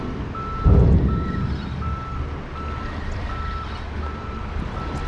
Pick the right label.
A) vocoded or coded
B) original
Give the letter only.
B